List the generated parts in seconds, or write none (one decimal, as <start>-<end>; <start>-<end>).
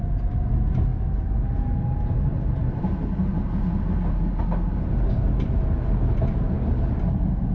none